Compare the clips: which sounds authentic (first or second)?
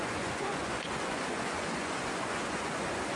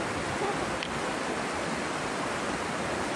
second